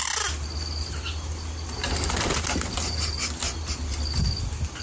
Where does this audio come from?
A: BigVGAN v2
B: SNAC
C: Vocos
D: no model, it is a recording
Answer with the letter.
D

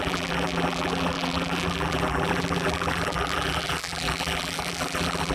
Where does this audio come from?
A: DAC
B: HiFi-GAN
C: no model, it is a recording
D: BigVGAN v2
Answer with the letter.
D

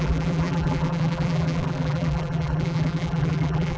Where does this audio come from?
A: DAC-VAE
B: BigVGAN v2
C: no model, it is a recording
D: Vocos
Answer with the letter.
B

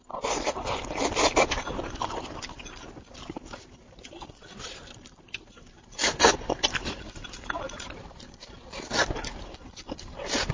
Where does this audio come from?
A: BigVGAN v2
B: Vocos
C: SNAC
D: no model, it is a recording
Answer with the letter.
A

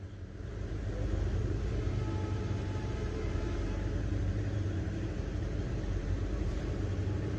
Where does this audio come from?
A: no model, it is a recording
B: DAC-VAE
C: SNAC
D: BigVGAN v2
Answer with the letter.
D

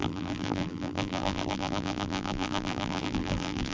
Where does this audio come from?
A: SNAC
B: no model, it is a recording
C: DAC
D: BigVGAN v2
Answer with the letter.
D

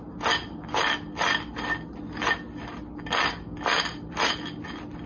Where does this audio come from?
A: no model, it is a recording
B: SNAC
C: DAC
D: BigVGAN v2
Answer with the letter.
A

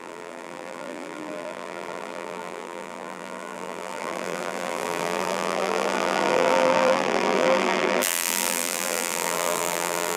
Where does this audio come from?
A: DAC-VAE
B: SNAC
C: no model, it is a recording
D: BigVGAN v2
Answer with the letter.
D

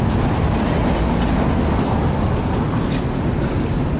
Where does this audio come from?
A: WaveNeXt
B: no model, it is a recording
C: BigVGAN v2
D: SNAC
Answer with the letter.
B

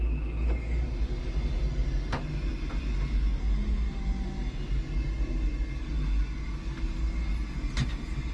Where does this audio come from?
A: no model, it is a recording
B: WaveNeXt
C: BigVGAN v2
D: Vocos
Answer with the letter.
A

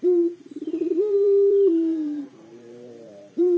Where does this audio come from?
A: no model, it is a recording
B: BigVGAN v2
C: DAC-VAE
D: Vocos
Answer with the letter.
B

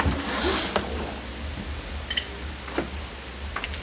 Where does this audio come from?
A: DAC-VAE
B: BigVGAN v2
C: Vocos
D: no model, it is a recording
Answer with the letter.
D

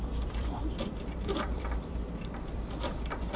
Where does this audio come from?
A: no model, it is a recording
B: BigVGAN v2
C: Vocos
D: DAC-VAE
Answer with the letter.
B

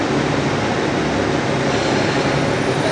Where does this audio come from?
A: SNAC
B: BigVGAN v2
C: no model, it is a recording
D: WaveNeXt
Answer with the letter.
C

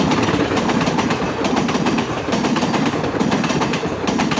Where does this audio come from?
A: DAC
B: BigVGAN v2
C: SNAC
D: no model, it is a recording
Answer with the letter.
B